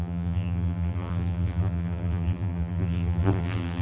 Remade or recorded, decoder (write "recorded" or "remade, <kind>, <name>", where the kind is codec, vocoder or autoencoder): remade, vocoder, BigVGAN v2